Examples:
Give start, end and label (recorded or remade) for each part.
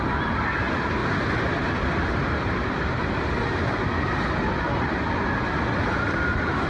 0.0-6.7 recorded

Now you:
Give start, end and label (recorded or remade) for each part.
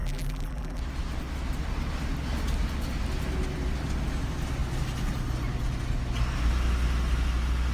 0.0-0.8 remade; 0.8-7.7 recorded